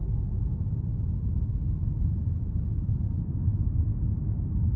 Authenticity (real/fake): real